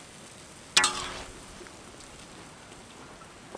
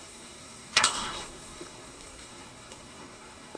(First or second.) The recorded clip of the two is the first